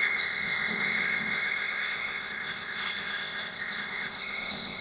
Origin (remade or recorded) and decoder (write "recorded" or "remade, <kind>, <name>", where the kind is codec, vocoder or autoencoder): remade, codec, ZipCodec